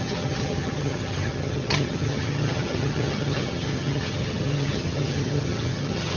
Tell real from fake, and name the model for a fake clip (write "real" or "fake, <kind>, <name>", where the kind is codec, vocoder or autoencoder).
fake, vocoder, HiFi-GAN